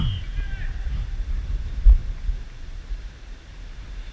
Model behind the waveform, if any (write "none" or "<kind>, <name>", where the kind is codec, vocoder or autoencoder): vocoder, BigVGAN v2